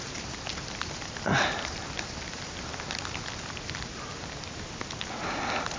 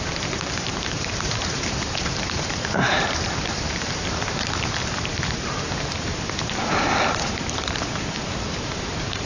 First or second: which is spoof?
second